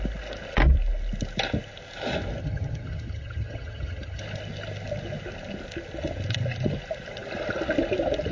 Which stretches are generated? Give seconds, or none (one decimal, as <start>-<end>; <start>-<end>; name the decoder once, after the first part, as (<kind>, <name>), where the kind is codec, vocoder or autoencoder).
2.4-4.2 (vocoder, HiFi-GAN)